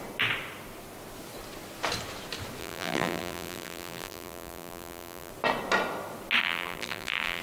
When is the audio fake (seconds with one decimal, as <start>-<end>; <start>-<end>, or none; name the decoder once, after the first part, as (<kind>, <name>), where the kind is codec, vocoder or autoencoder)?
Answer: 2.6-5.3 (vocoder, BigVGAN v2); 6.4-7.4